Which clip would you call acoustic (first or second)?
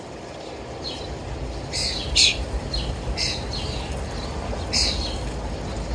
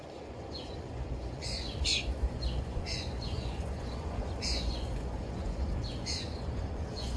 first